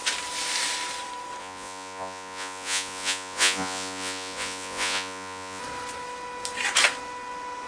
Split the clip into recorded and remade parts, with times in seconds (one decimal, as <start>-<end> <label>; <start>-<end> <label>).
0.0-1.4 recorded; 1.4-5.6 remade; 5.6-7.7 recorded